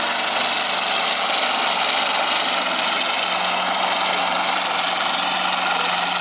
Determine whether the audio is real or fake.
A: real